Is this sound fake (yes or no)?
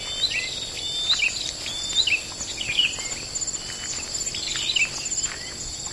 no